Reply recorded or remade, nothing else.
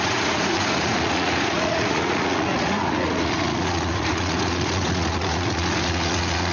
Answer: remade